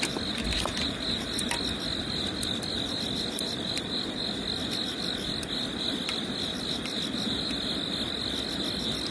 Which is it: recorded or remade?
recorded